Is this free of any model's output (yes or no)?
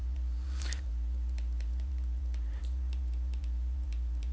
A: no